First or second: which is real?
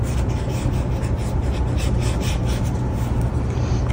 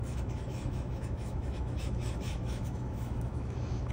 first